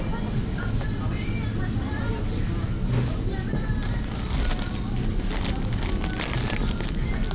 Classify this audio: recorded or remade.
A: recorded